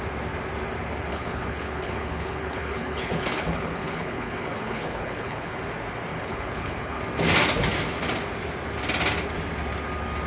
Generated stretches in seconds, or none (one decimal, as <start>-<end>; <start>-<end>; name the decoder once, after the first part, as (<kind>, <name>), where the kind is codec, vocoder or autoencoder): 1.1-5.6 (codec, HILCodec); 6.1-7.0